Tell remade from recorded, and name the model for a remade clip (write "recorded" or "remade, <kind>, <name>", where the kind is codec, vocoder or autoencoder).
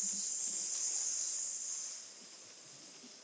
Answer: recorded